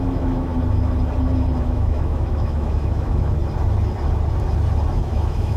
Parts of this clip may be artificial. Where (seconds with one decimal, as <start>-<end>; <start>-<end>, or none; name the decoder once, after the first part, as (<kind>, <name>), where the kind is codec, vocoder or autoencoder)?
0.0-0.5 (autoencoder, DAC-VAE); 1.6-3.4; 4.9-5.6